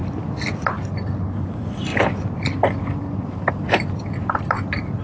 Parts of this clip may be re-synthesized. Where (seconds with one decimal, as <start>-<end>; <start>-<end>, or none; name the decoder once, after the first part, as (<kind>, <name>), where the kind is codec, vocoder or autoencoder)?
none

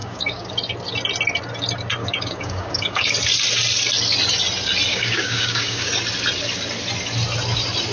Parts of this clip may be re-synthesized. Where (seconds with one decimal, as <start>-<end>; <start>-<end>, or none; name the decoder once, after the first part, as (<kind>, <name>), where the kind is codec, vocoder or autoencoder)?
0.0-0.5 (codec, DAC); 2.0-3.1; 4.9-5.9